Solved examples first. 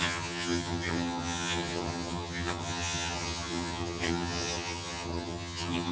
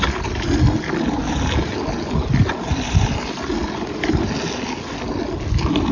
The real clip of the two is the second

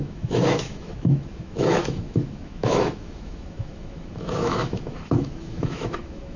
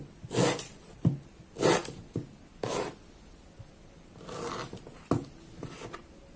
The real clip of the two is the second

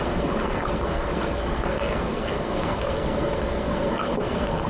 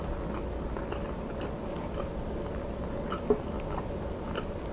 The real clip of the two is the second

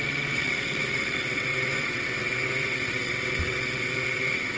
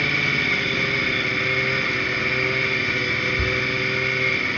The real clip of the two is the second